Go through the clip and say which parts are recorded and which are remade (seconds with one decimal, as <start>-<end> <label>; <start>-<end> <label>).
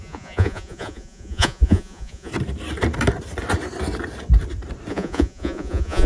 0.0-2.3 remade; 2.3-4.9 recorded; 4.9-6.1 remade